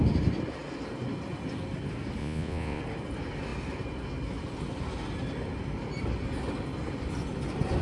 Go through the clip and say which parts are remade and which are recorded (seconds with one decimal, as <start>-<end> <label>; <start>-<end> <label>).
0.0-2.2 recorded; 2.2-2.8 remade; 2.8-7.8 recorded